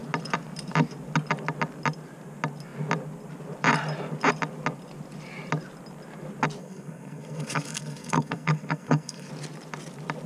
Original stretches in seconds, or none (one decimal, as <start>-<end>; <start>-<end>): 0.0-6.6; 9.3-10.3